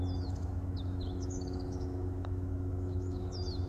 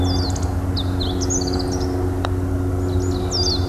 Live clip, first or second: second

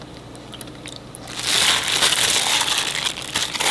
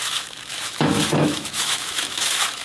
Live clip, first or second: first